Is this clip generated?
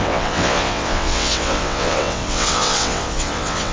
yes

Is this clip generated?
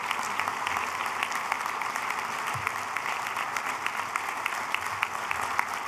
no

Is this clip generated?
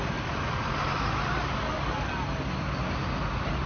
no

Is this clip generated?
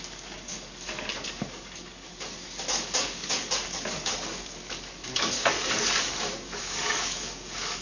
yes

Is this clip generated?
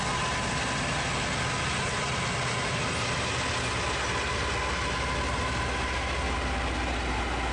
no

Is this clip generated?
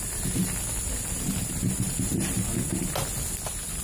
no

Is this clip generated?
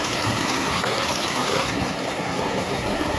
yes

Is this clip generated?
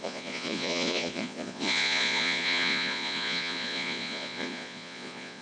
yes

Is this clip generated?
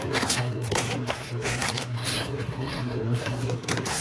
yes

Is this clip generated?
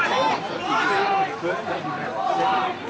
no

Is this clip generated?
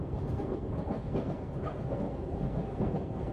yes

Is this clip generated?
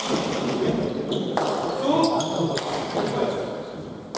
no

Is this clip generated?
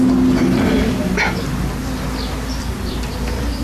no